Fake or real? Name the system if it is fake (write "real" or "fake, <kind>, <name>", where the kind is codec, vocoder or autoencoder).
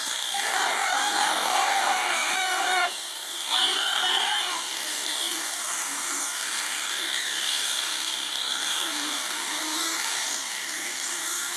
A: fake, codec, DAC